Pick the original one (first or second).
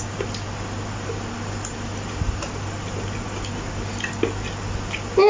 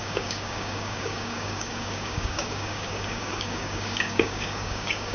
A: first